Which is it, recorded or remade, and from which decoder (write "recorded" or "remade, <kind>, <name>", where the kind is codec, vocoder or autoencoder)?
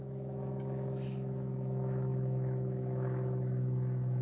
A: remade, autoencoder, DAC-VAE